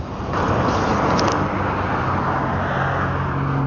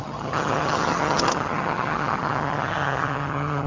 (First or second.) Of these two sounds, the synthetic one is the second